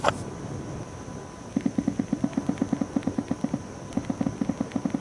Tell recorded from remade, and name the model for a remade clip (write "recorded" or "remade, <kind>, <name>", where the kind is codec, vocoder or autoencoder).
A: recorded